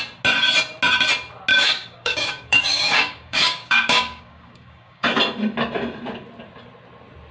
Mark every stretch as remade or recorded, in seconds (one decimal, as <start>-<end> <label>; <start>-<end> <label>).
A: 0.0-1.5 recorded; 1.5-5.2 remade; 5.2-7.3 recorded